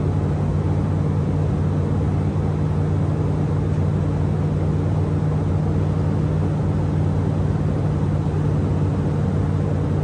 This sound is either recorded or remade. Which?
recorded